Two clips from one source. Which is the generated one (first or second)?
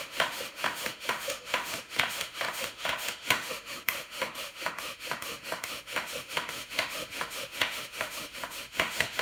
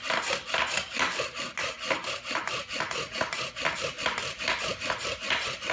first